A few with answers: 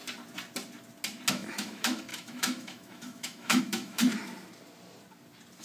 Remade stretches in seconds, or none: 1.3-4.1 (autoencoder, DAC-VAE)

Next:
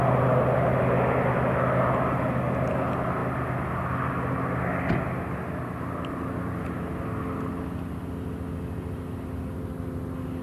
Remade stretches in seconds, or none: none

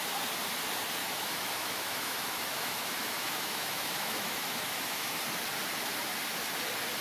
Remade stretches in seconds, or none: 1.0-5.2 (autoencoder, DAC-VAE)